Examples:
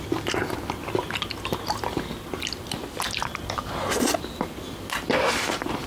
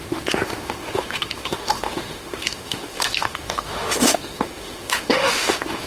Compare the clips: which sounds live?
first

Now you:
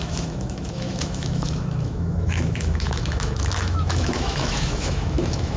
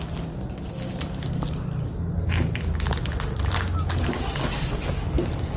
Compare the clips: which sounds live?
second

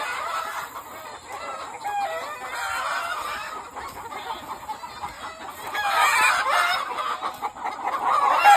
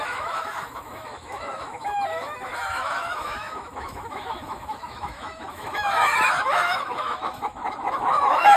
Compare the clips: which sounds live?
first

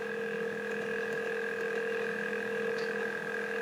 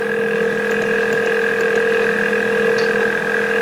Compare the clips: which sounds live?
second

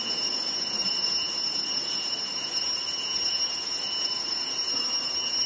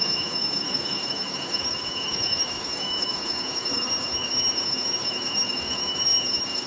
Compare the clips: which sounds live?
first